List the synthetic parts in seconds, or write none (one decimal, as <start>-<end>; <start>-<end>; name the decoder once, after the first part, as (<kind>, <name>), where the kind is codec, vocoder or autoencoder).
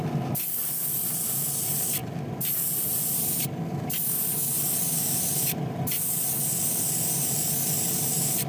none